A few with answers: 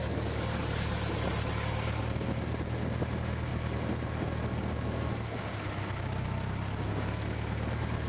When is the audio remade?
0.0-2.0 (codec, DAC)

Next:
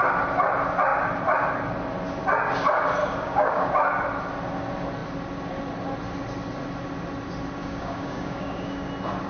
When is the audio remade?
3.0-3.7 (codec, DAC); 7.6-8.9

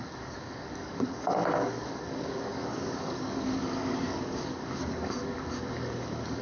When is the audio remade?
0.0-6.4 (codec, DAC)